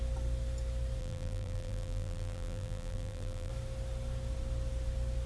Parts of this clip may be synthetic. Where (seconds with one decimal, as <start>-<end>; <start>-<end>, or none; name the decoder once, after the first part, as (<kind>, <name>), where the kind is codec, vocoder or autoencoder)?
1.0-3.5 (vocoder, BigVGAN v2)